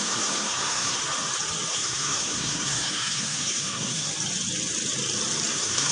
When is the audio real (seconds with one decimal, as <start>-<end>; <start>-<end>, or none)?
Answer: 1.0-1.7; 4.1-5.5